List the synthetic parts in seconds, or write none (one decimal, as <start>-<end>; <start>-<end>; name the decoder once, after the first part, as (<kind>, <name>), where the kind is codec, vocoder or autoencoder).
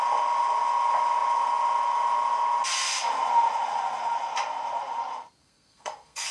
5.4-6.3 (codec, SNAC)